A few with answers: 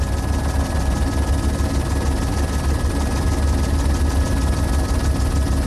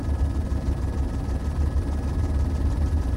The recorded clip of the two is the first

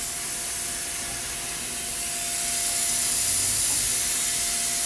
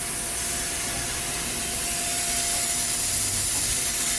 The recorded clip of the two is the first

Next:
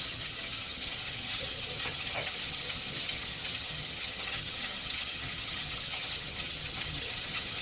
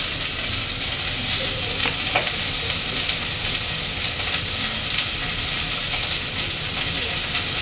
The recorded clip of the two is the second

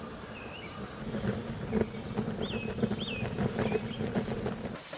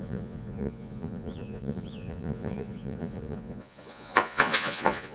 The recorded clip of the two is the first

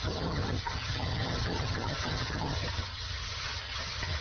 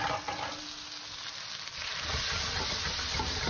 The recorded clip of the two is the second